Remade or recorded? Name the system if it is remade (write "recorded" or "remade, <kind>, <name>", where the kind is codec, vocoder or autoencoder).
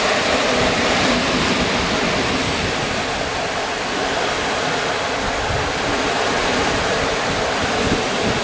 remade, vocoder, BigVGAN v2